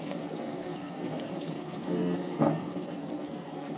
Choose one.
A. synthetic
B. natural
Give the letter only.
A